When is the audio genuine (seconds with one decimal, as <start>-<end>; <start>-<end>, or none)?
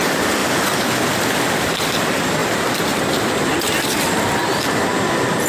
0.4-1.8